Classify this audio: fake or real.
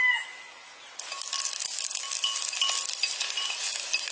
real